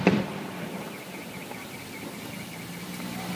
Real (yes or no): yes